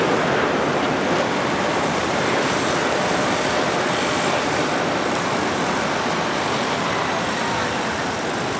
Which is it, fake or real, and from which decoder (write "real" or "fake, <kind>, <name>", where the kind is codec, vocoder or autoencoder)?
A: real